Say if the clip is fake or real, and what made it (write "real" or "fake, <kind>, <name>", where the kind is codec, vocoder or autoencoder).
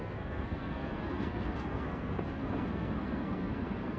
fake, codec, SNAC